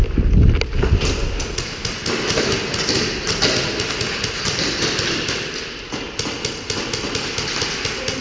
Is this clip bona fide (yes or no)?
yes